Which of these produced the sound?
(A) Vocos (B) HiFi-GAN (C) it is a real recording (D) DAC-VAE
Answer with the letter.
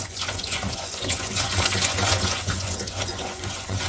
A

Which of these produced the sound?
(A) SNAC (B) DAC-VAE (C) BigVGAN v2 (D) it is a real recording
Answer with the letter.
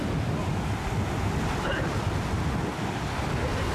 D